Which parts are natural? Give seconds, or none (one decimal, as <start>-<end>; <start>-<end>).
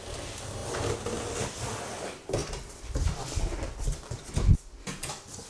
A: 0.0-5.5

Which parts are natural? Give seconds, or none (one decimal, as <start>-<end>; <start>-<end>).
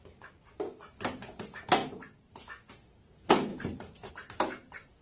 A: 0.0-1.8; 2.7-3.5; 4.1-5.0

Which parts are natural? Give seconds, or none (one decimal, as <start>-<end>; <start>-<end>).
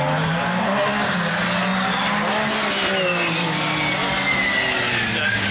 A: 0.0-5.5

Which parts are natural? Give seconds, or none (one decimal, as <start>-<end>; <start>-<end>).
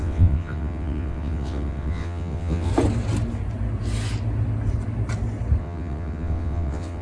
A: 2.7-5.6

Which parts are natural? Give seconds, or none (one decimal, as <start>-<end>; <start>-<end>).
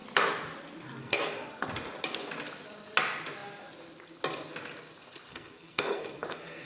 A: 0.0-1.0; 1.5-5.3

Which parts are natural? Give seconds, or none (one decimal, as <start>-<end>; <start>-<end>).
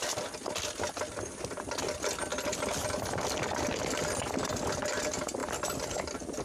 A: 0.0-6.4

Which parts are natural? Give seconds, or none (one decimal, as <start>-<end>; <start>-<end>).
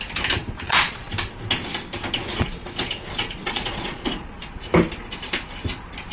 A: 0.0-0.4; 1.1-2.3; 4.5-6.1